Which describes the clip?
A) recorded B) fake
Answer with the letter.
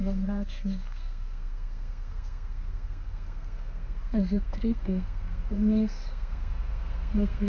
B